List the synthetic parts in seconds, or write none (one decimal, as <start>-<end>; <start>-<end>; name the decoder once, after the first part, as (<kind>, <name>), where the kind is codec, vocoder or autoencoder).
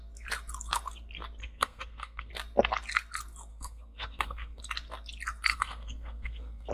1.4-2.3 (codec, SNAC); 3.5-4.6; 5.5-6.7